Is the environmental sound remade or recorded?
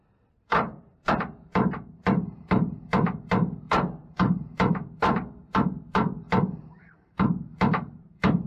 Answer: remade